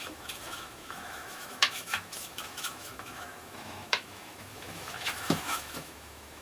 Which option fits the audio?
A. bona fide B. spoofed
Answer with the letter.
B